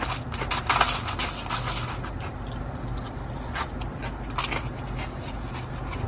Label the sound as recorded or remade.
recorded